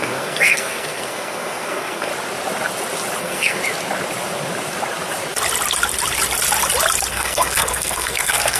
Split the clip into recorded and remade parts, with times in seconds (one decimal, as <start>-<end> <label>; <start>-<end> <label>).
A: 0.0-2.1 remade; 2.1-3.2 recorded; 3.2-3.6 remade; 3.6-7.1 recorded; 7.1-8.6 remade